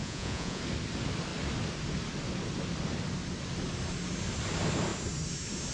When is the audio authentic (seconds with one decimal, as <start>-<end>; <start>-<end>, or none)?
0.6-5.7